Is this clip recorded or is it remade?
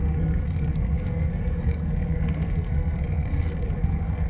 remade